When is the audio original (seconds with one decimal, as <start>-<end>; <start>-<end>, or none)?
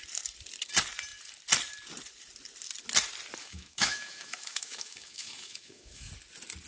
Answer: 0.0-3.4; 6.1-6.7